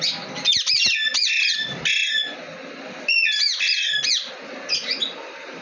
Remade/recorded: recorded